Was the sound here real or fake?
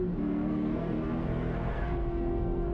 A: fake